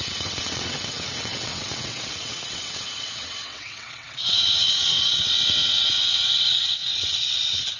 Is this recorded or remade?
remade